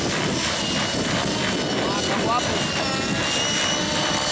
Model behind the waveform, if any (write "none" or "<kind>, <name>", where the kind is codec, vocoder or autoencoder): none